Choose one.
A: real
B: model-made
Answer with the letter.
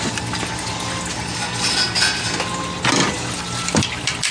A